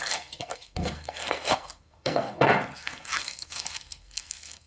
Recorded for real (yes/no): no